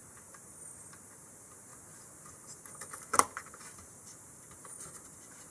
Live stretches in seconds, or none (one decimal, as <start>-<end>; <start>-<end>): 1.7-2.3